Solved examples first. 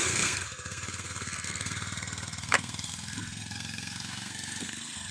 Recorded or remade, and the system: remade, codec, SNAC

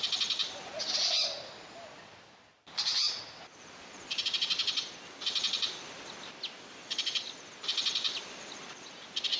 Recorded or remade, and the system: recorded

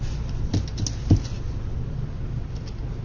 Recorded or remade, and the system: recorded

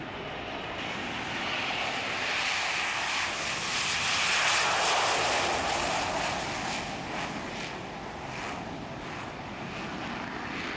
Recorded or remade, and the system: recorded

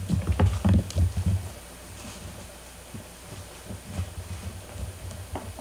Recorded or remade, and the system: recorded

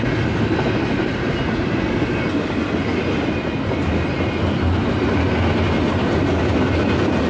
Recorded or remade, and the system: recorded